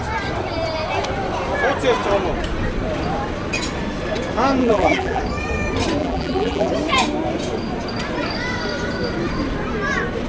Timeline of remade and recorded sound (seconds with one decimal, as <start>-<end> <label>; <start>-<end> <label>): 0.0-4.6 recorded; 4.6-5.2 remade; 5.2-6.0 recorded; 6.0-6.7 remade; 6.7-10.3 recorded